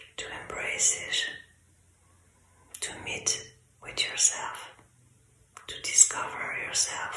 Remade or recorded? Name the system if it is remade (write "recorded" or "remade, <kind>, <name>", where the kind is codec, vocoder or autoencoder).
recorded